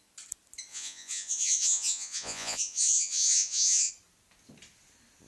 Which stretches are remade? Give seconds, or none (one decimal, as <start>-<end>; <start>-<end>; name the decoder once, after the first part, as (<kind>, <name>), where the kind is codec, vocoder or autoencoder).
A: 0.7-3.9 (vocoder, Vocos)